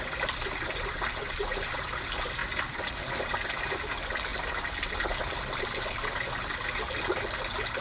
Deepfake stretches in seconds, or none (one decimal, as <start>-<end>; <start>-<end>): 1.2-1.9